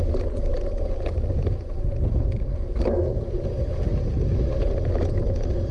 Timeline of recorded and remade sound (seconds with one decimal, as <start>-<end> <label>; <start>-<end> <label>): 0.0-3.1 recorded; 3.1-3.8 remade; 3.8-5.7 recorded